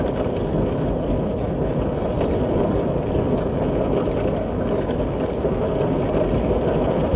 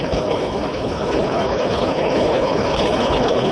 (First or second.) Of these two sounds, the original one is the first